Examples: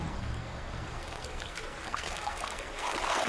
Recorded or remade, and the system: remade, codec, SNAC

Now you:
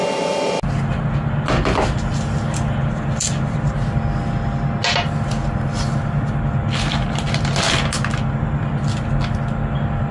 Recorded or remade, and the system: recorded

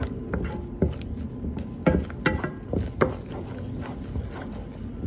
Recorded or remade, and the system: recorded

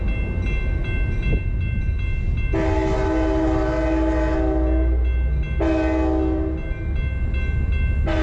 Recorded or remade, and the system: recorded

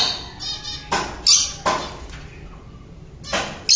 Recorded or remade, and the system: recorded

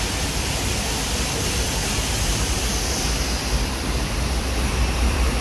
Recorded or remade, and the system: recorded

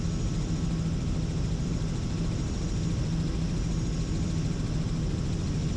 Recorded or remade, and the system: recorded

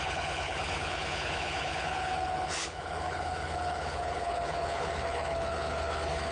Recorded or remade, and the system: remade, codec, HILCodec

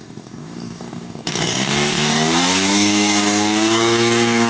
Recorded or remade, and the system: remade, codec, DAC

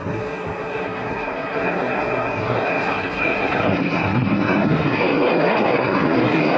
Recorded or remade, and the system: remade, codec, SNAC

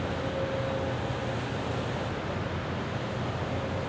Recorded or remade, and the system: recorded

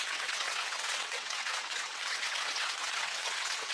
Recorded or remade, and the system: remade, vocoder, WaveNeXt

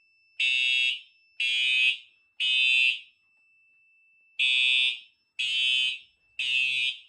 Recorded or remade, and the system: recorded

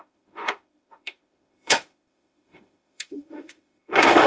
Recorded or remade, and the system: remade, autoencoder, DAC-VAE